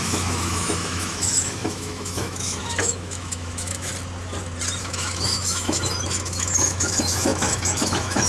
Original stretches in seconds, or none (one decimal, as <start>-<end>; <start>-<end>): 3.9-4.8